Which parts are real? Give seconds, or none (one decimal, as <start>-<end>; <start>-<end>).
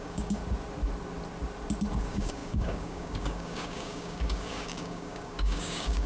0.4-2.0